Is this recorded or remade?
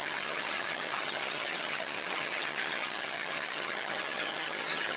remade